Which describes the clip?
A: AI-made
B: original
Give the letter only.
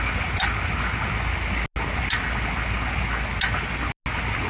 B